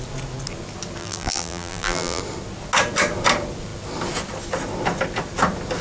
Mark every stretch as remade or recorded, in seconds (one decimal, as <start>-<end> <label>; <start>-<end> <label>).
0.0-1.0 recorded; 1.0-2.2 remade; 2.2-5.8 recorded